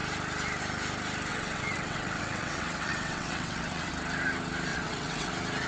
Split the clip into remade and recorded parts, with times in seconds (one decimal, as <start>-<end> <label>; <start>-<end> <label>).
0.0-1.3 recorded; 1.3-3.9 remade; 3.9-4.7 recorded; 4.7-5.3 remade; 5.3-5.7 recorded